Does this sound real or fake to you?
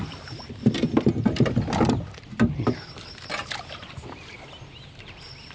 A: real